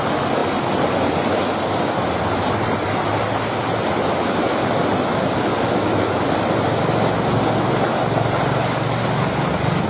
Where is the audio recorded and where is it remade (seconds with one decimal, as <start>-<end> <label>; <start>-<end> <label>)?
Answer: 0.0-0.4 recorded; 0.4-3.0 remade; 3.0-9.9 recorded